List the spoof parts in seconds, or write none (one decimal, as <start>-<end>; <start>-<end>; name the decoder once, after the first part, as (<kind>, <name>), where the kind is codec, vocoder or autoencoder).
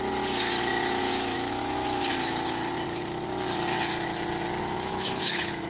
0.7-2.1 (autoencoder, DAC-VAE); 4.6-5.7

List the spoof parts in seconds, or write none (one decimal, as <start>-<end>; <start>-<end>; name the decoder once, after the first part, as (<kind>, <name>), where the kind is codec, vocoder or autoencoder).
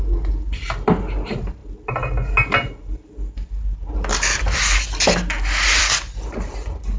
none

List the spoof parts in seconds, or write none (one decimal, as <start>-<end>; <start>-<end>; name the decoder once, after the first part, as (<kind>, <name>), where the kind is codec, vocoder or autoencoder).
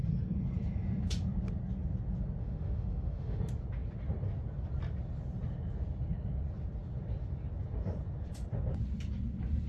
2.4-3.4 (autoencoder, DAC-VAE)